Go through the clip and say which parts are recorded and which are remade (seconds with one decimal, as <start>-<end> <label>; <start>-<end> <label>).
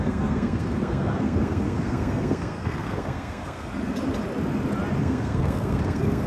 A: 0.0-3.7 remade; 3.7-5.0 recorded; 5.0-6.3 remade